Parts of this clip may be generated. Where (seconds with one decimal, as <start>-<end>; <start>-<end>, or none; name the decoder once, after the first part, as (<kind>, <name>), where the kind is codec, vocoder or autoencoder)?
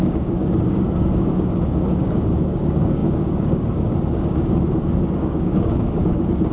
0.0-6.5 (codec, DAC)